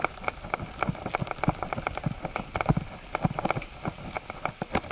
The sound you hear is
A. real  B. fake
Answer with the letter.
A